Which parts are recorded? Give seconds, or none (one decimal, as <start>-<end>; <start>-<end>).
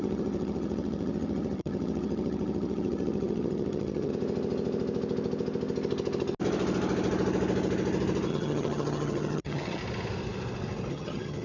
4.1-8.3; 9.8-10.9